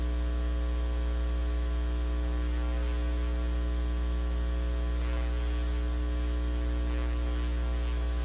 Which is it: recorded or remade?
recorded